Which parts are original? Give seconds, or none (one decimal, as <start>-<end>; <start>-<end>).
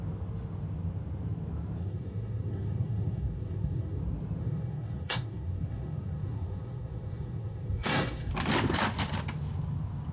0.0-1.8; 4.0-4.4; 8.3-10.1